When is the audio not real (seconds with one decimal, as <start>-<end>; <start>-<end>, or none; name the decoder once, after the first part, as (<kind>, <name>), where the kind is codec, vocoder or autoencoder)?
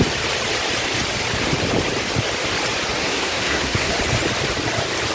3.0-3.9 (codec, SNAC)